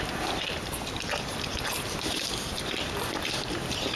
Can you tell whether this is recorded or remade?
recorded